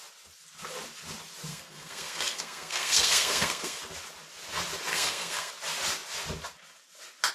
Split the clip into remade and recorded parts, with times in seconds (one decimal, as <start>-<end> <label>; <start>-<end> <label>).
0.0-1.5 recorded; 1.5-3.8 remade; 3.8-4.9 recorded; 4.9-5.5 remade; 5.5-7.3 recorded